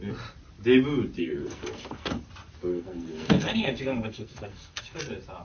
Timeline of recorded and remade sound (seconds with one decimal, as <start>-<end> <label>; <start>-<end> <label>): 0.0-1.2 recorded; 1.2-2.2 remade; 2.2-2.7 recorded; 2.7-5.0 remade; 5.0-5.4 recorded